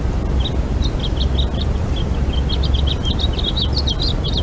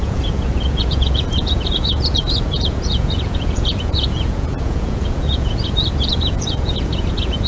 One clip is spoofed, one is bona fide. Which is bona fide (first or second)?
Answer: first